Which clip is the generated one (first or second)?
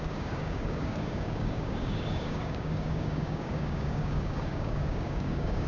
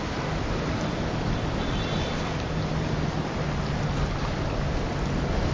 first